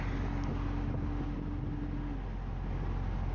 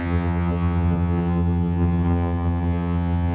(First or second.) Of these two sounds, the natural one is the first